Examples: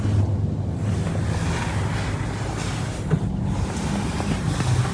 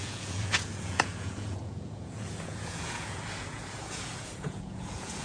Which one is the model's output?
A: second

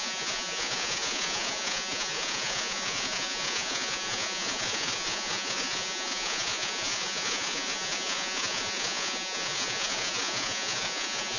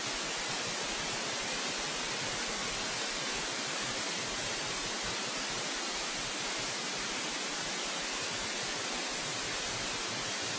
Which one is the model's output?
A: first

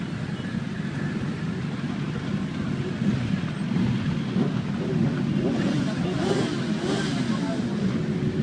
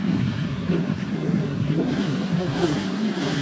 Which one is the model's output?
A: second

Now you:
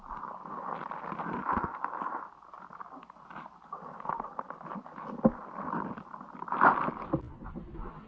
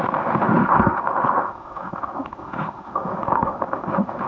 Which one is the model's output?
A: second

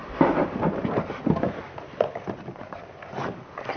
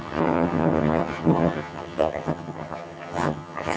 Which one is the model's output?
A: second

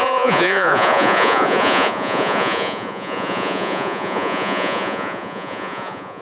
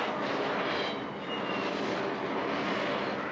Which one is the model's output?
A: first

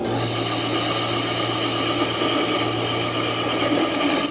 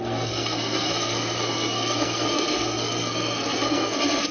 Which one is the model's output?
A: second